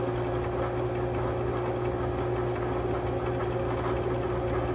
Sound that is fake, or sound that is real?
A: real